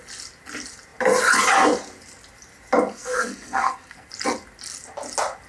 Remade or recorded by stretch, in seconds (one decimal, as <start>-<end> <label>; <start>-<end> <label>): 0.0-2.9 recorded; 2.9-4.1 remade; 4.1-5.5 recorded